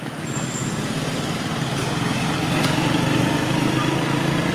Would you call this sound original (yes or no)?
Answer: yes